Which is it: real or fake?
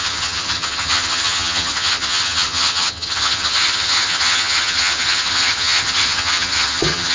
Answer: fake